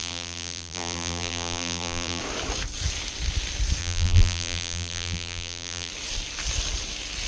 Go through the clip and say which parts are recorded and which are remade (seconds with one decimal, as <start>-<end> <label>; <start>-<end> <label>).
0.0-2.2 remade; 2.2-3.8 recorded; 3.8-5.9 remade; 5.9-7.3 recorded

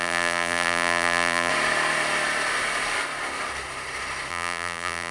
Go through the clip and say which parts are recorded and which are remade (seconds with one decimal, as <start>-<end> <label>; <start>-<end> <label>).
0.0-1.5 remade; 1.5-4.3 recorded; 4.3-5.1 remade